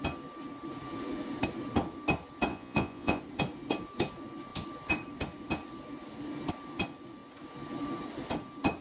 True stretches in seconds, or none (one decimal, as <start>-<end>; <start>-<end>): 0.0-2.5; 3.2-8.8